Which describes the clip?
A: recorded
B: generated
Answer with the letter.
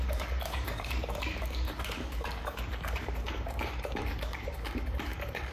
B